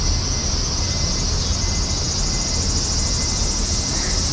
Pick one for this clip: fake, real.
real